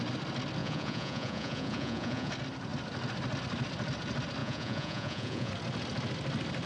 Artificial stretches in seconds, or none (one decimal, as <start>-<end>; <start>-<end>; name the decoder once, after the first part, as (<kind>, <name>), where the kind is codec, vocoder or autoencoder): 0.6-2.3 (vocoder, Vocos); 4.4-5.5